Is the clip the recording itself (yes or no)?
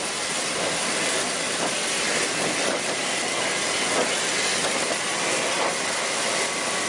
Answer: yes